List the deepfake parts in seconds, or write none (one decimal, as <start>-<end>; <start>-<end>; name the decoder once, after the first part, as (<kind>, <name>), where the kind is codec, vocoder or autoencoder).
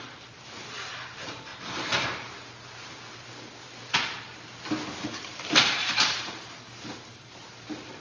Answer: 0.0-1.5 (vocoder, BigVGAN v2); 5.2-8.0